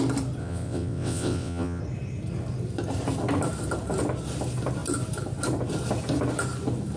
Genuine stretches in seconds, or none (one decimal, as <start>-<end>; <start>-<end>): 0.0-0.4; 1.8-7.0